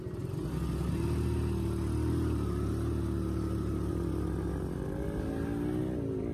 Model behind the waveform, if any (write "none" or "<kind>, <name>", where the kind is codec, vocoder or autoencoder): none